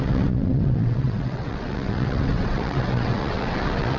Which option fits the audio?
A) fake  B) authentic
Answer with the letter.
A